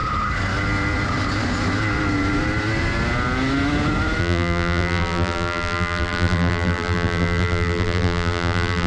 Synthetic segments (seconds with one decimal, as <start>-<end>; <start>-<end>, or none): 4.2-8.9